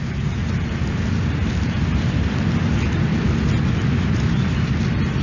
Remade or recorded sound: recorded